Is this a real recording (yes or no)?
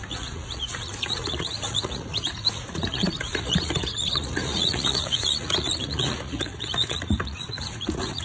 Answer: no